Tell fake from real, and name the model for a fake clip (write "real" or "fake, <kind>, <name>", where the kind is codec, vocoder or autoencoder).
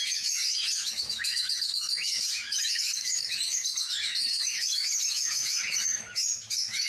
fake, autoencoder, DAC-VAE